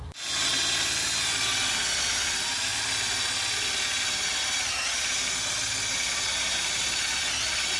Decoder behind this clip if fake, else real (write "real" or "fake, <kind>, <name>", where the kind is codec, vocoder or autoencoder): real